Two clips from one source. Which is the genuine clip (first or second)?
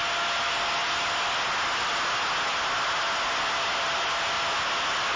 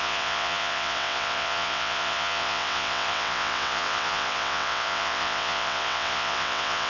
first